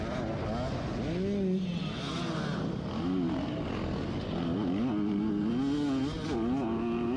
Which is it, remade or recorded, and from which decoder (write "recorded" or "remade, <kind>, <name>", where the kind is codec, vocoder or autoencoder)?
recorded